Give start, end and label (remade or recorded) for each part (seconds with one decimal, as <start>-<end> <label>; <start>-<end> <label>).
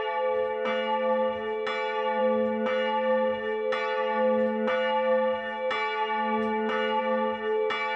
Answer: 0.0-8.0 recorded